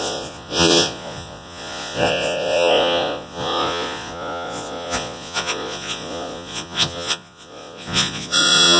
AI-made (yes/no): yes